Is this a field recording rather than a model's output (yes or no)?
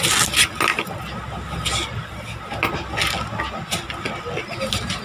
yes